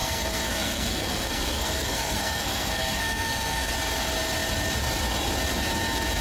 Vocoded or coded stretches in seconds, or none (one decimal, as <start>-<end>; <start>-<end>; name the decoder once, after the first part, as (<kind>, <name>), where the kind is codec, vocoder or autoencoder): 0.0-3.7 (codec, SNAC)